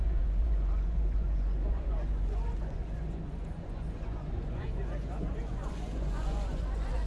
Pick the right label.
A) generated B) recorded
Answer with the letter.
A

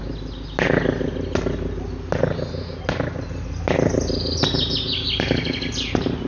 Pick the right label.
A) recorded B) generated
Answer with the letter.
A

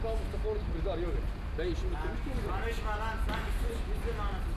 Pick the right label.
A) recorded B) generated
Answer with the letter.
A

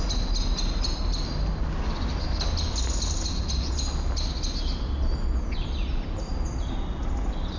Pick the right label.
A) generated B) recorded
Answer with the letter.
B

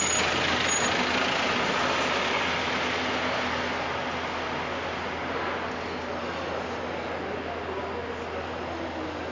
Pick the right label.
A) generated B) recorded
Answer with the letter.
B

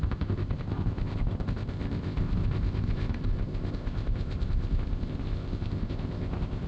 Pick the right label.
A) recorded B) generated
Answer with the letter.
B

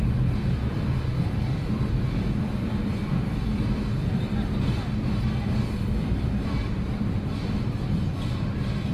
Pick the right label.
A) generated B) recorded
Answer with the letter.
A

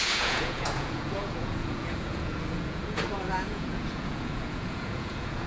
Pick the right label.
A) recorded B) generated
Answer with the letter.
B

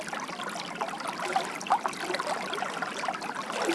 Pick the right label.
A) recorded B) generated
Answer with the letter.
A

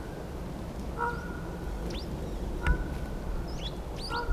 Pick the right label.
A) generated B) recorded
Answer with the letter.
B